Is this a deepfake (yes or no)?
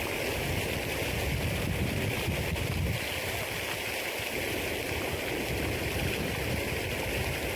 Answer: no